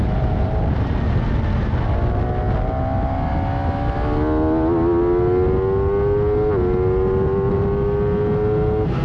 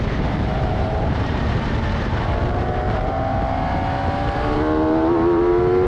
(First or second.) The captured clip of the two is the first